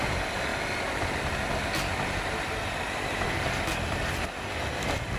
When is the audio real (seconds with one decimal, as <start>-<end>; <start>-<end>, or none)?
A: 0.0-5.2